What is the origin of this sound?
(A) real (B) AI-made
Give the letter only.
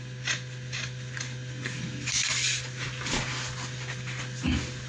A